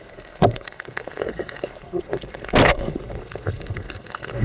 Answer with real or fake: fake